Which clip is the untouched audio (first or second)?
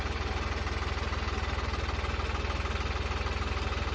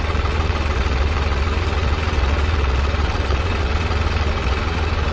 first